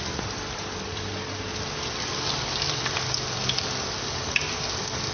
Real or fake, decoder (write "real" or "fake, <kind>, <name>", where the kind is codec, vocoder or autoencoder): real